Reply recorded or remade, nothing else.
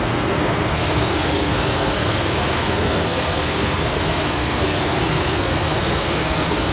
remade